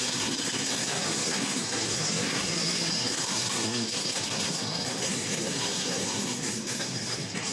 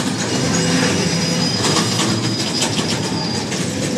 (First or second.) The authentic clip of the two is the second